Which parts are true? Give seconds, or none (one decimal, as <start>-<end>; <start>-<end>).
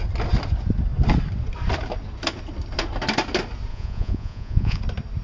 0.0-3.7; 4.8-5.2